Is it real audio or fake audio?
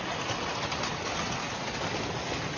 real